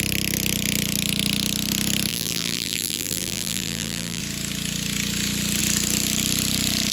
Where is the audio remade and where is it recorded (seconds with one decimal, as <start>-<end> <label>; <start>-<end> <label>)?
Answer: 0.0-2.1 recorded; 2.1-4.2 remade; 4.2-6.9 recorded